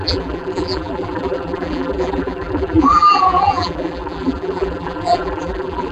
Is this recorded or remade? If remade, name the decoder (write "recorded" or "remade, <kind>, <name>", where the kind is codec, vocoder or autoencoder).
remade, vocoder, BigVGAN v2